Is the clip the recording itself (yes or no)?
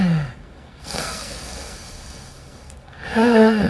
no